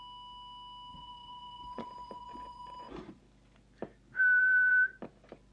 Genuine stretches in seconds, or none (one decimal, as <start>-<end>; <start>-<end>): 0.0-0.9; 3.2-5.5